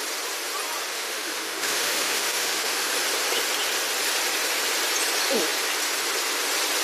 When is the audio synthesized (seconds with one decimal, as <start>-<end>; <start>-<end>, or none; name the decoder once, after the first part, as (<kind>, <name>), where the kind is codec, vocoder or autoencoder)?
0.9-2.9 (autoencoder, DAC-VAE)

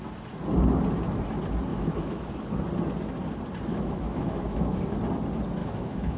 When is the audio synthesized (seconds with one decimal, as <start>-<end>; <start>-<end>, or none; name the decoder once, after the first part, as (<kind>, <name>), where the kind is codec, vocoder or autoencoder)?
1.7-2.3 (autoencoder, DAC-VAE); 3.7-4.8; 5.6-6.2

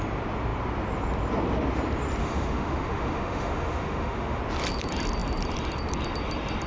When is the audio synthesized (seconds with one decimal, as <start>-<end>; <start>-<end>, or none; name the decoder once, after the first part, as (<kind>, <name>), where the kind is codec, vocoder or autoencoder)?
2.2-4.4 (autoencoder, DAC-VAE)